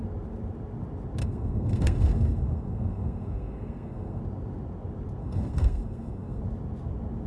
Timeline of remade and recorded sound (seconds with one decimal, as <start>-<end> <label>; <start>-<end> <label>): 0.0-1.2 recorded; 1.2-4.2 remade; 4.2-5.2 recorded; 5.2-6.4 remade; 6.4-7.3 recorded